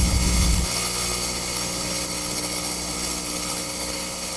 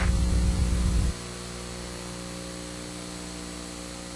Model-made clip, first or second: first